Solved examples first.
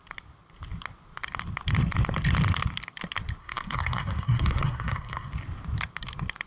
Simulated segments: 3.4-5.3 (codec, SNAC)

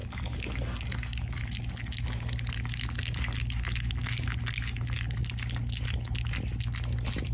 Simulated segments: none

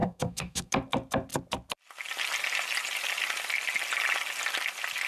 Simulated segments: 0.0-0.7 (codec, SNAC)